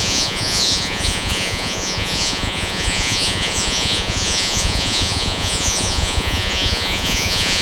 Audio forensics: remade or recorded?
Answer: remade